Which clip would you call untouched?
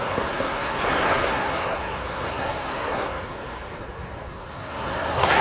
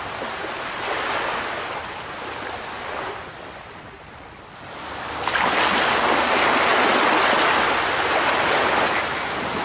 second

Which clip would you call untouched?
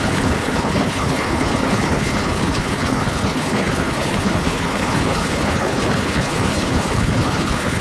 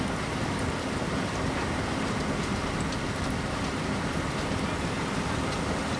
second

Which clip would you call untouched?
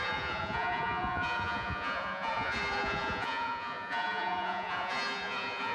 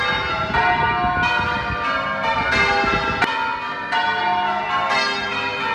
second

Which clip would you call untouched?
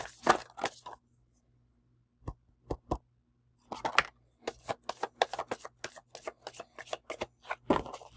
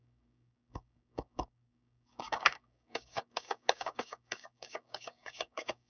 first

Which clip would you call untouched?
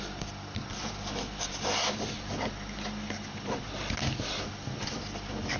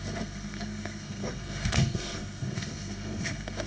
first